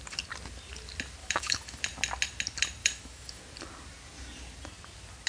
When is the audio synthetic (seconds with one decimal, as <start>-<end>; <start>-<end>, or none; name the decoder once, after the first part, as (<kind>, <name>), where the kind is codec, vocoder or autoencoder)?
1.2-1.8 (autoencoder, DAC-VAE); 2.8-3.4